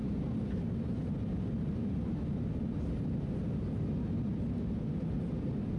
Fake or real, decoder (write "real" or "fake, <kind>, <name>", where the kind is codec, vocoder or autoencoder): real